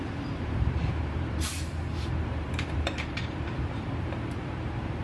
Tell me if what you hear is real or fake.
fake